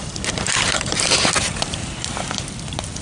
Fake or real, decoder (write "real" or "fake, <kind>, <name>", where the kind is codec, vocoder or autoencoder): fake, vocoder, BigVGAN v2